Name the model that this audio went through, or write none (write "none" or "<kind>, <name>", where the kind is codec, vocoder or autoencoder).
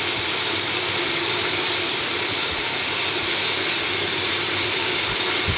vocoder, BigVGAN v2